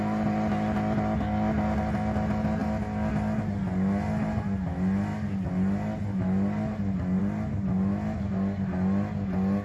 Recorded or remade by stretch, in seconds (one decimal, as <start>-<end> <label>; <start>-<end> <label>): 0.0-9.6 recorded